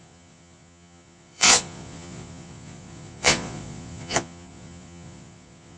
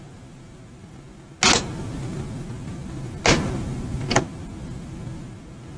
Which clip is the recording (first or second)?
second